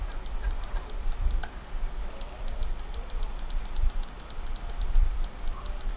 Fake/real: real